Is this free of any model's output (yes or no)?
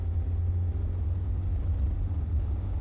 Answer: yes